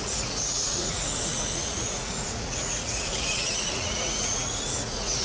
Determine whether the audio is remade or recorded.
remade